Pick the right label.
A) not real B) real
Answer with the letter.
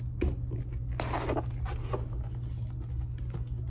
B